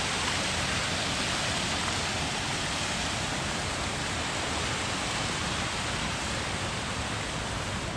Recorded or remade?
recorded